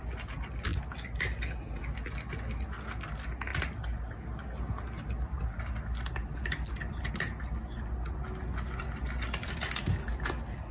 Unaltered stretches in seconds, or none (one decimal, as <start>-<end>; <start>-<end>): 0.0-10.7